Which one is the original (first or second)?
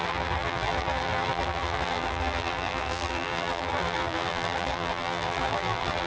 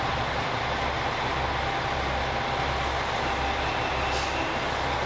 second